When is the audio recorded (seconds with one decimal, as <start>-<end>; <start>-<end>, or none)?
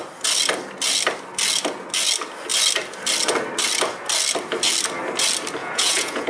0.0-5.6